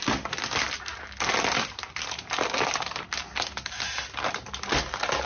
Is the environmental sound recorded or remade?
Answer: recorded